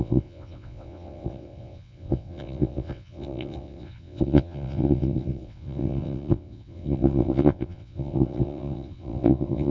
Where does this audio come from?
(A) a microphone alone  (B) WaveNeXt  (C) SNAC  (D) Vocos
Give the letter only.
B